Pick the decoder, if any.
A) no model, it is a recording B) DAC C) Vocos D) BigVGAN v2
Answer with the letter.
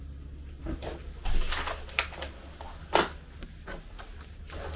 A